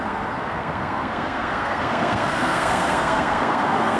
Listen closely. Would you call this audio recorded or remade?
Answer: remade